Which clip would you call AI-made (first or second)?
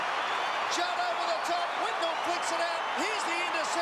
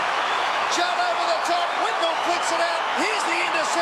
second